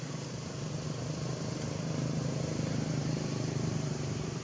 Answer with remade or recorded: remade